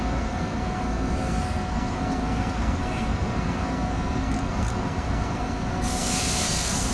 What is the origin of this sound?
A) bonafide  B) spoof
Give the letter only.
B